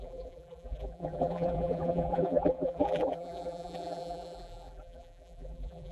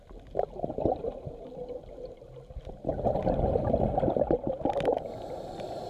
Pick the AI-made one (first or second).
first